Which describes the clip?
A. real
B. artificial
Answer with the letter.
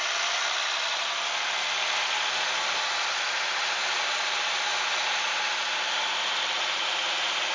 A